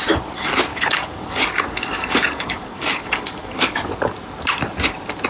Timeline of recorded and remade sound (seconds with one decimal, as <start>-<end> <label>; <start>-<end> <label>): 0.0-0.7 recorded; 0.7-3.9 remade; 3.9-5.3 recorded